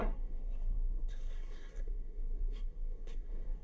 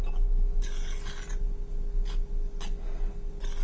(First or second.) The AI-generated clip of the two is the first